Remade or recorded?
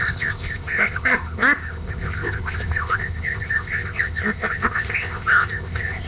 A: remade